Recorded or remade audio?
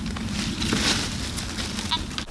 recorded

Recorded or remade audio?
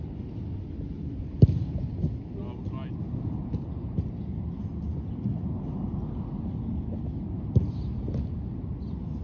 recorded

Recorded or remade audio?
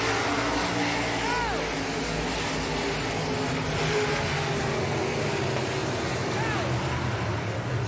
recorded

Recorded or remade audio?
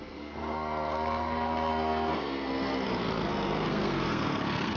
remade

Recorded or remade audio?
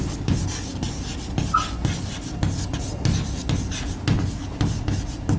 recorded